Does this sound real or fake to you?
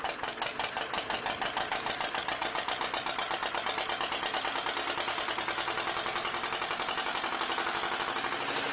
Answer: real